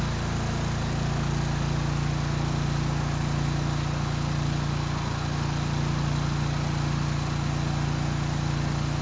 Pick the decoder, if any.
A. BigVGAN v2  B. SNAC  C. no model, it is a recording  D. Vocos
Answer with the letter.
C